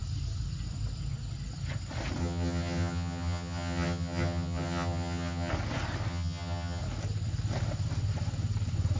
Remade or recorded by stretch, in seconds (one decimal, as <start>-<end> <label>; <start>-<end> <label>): 0.0-2.2 recorded; 2.2-5.5 remade; 5.5-6.1 recorded; 6.1-6.8 remade; 6.8-9.0 recorded